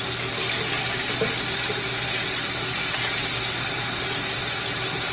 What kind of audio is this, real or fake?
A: real